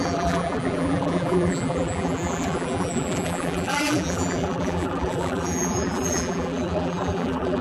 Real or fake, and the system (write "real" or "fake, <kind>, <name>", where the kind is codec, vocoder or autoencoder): fake, vocoder, BigVGAN v2